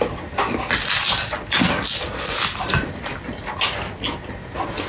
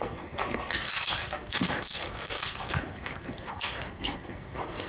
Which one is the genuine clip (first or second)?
first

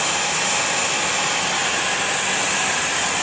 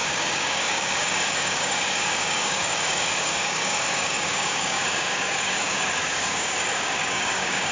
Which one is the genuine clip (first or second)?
first